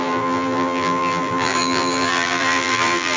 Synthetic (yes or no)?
yes